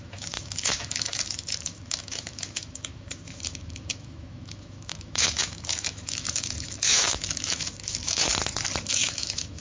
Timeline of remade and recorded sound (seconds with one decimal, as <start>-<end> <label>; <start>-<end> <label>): 0.0-8.3 remade; 8.3-8.9 recorded; 8.9-9.6 remade